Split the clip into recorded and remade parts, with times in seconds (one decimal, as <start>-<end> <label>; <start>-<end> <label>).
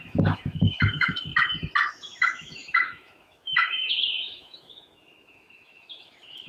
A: 0.0-1.3 remade; 1.3-1.9 recorded; 1.9-6.5 remade